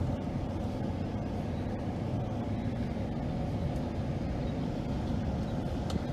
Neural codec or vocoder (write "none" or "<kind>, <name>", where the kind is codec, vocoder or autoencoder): none